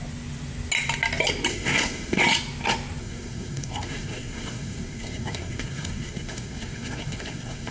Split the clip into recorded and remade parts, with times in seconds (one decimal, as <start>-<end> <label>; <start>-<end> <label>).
0.0-1.5 recorded; 1.5-2.2 remade; 2.2-3.0 recorded; 3.0-7.7 remade